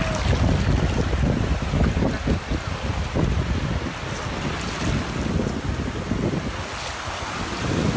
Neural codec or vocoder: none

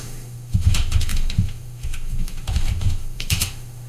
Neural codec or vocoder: autoencoder, DAC-VAE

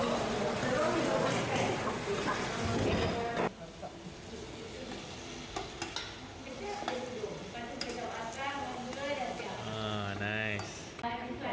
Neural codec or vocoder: none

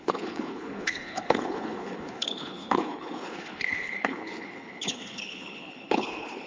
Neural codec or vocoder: codec, HILCodec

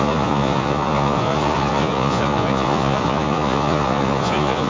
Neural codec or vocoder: vocoder, Vocos